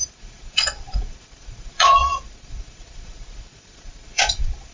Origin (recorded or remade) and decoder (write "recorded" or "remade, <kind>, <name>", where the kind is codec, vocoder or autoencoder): remade, vocoder, Vocos